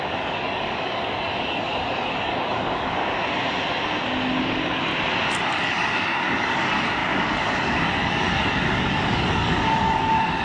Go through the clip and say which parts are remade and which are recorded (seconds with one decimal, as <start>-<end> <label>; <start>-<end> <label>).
0.0-3.0 remade; 3.0-4.4 recorded; 4.4-4.9 remade; 4.9-5.4 recorded; 5.4-10.4 remade